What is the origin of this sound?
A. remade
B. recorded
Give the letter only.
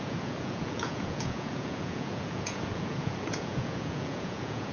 A